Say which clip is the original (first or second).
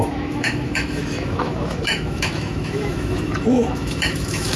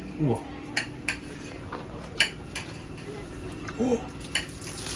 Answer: second